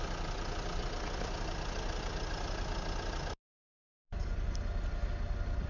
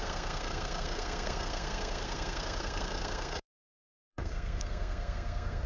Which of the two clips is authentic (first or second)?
first